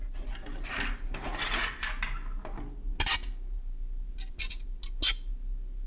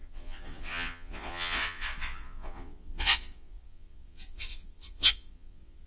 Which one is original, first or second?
first